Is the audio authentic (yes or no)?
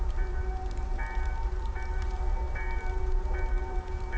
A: no